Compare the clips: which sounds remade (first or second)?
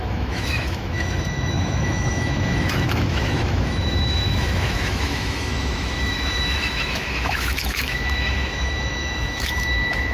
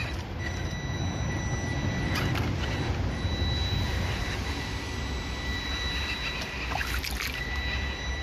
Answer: first